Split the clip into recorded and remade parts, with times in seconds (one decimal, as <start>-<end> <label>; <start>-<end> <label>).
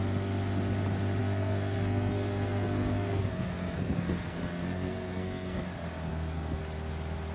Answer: 0.0-1.2 recorded; 1.2-5.6 remade; 5.6-6.1 recorded; 6.1-6.6 remade; 6.6-7.3 recorded